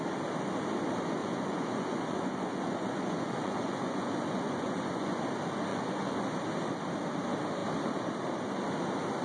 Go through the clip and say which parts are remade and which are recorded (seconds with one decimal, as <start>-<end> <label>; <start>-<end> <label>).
0.0-1.2 recorded; 1.2-5.2 remade; 5.2-5.7 recorded; 5.7-6.2 remade; 6.2-9.2 recorded